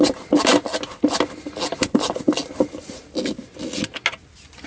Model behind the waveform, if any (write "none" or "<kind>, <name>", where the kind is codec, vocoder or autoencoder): none